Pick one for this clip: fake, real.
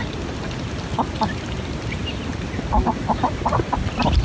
real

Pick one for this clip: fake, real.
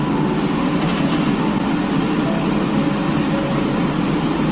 real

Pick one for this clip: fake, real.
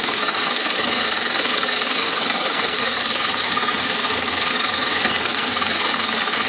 fake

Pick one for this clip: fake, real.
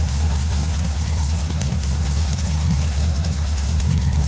fake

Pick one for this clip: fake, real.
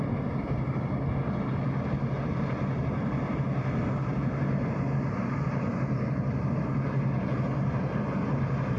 real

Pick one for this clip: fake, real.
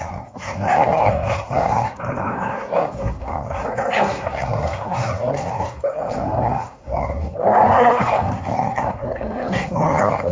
fake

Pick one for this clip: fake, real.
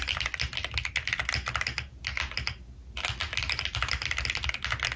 real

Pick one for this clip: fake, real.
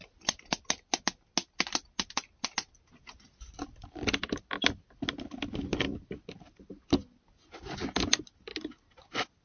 real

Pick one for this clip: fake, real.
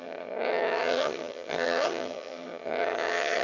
fake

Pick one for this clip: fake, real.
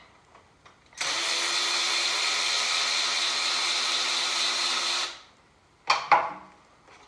real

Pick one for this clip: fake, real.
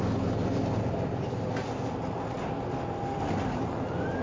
real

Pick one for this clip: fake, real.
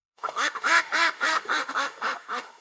fake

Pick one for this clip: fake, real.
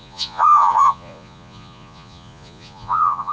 fake